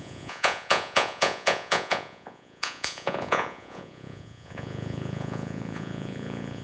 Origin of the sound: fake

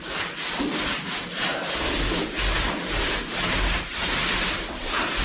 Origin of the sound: real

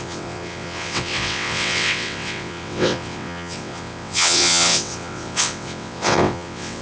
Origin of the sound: fake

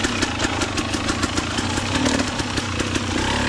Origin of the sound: real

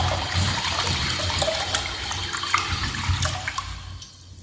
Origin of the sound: real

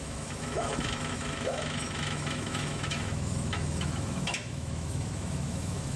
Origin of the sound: fake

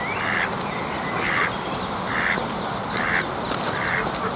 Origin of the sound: real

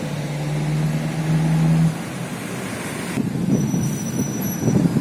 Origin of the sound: real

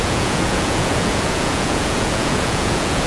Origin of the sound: fake